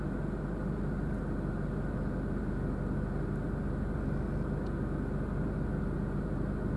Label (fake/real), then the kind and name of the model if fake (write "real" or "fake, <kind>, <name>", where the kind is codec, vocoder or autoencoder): real